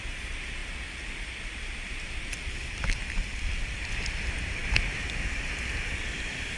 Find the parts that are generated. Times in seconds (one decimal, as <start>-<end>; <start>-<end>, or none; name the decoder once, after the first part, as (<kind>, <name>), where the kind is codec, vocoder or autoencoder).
none